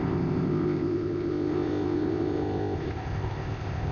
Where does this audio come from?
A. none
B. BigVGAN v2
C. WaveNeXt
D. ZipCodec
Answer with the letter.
D